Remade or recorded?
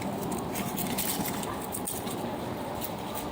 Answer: recorded